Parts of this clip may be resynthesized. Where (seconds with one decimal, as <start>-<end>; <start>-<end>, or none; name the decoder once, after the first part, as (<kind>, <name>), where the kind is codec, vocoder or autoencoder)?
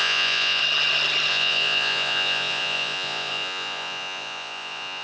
0.0-0.6 (vocoder, Vocos); 1.3-5.0